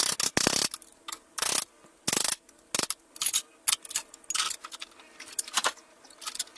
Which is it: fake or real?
real